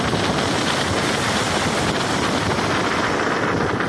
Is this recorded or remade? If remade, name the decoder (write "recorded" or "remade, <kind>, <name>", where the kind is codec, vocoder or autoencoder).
recorded